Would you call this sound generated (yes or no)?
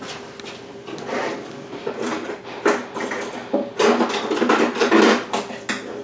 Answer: no